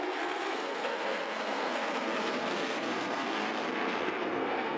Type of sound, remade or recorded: remade